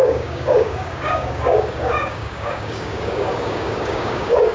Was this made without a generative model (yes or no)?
no